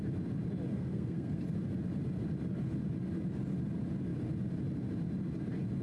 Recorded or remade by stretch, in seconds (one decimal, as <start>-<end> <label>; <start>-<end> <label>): 0.0-0.7 recorded; 0.7-1.4 remade; 1.4-5.8 recorded